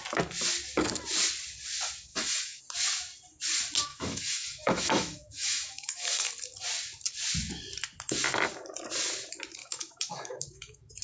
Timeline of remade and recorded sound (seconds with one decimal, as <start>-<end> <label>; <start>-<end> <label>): 0.0-2.1 recorded; 2.1-2.6 remade; 2.6-3.9 recorded; 3.9-6.3 remade; 6.3-9.6 recorded; 9.6-11.0 remade